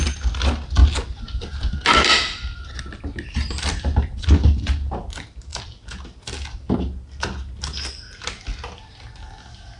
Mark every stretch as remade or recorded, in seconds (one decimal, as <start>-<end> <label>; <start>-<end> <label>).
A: 0.0-0.8 recorded; 0.8-4.2 remade; 4.2-5.5 recorded; 5.5-6.0 remade; 6.0-9.8 recorded